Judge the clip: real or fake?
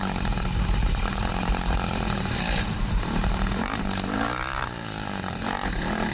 fake